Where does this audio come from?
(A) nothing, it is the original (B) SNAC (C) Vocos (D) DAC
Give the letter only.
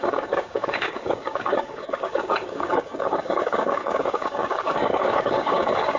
D